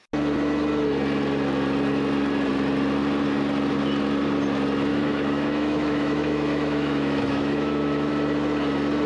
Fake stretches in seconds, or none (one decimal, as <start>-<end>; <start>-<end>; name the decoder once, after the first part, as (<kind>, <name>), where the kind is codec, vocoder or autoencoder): 4.9-8.1 (autoencoder, DAC-VAE)